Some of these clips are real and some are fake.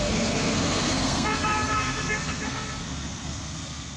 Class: fake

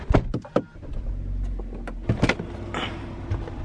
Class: real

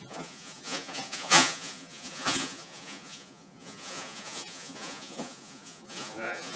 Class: fake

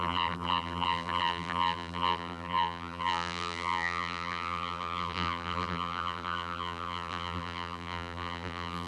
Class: fake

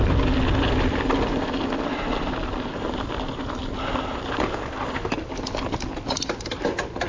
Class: real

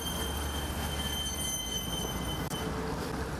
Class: real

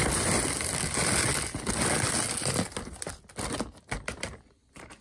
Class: real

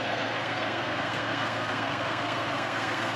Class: fake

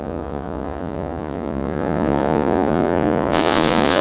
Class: fake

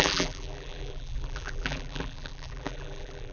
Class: fake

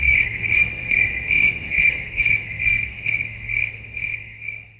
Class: fake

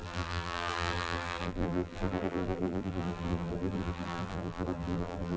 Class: fake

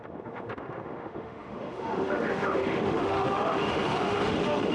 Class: fake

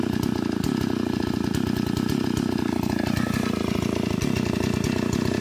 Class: real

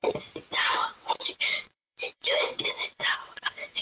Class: fake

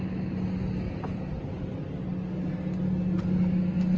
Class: real